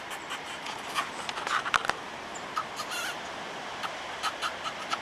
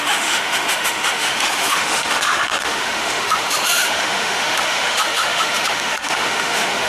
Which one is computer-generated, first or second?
second